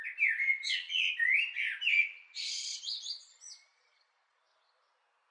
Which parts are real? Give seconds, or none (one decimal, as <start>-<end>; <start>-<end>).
0.0-0.4; 1.1-1.9; 4.4-5.3